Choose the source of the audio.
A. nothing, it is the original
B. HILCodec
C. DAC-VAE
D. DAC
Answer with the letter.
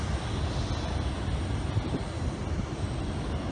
A